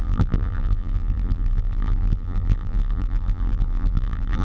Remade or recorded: remade